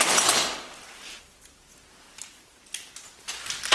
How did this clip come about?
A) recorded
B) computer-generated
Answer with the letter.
A